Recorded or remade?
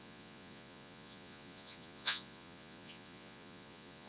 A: remade